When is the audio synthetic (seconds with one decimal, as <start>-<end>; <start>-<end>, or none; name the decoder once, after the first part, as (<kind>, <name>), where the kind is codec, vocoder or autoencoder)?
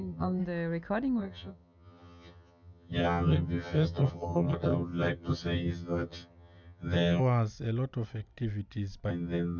0.0-0.4 (vocoder, HiFi-GAN); 1.2-7.2; 9.1-9.6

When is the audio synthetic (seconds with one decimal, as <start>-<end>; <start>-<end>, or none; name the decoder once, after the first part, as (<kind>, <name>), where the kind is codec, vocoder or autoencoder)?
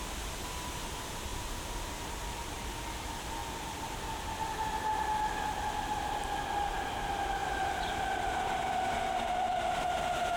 3.4-4.0 (vocoder, BigVGAN v2); 7.4-9.8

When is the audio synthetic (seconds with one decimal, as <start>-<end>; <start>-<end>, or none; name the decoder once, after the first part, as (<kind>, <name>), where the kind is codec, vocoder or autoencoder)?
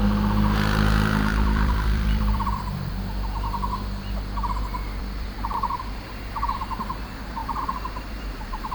1.3-2.9 (vocoder, BigVGAN v2); 5.0-6.6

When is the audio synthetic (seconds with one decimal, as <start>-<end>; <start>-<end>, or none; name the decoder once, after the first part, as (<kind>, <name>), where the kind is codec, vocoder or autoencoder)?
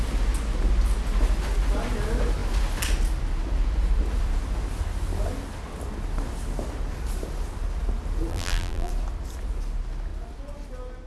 8.3-8.9 (vocoder, BigVGAN v2)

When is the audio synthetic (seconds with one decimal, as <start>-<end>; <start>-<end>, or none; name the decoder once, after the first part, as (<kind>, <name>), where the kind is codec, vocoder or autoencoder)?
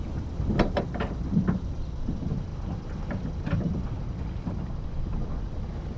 none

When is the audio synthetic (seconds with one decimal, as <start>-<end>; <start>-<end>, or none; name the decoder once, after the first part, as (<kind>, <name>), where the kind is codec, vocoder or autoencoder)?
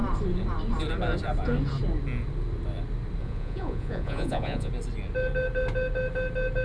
3.2-4.7 (vocoder, Vocos)